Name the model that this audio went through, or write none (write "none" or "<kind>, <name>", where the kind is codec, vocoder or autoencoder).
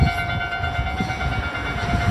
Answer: none